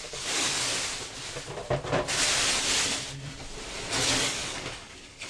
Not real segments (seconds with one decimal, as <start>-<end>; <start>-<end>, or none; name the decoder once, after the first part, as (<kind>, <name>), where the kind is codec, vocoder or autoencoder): 0.0-0.7 (codec, DAC); 3.9-5.3